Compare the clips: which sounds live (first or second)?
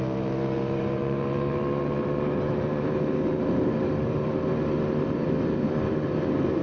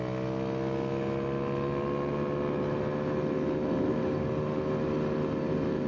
second